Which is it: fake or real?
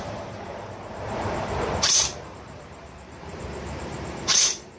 fake